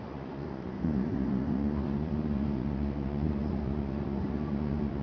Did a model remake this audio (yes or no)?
yes